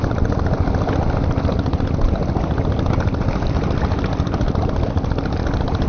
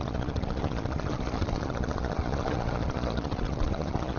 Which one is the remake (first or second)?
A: second